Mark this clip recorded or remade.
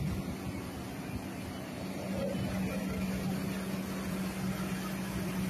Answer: recorded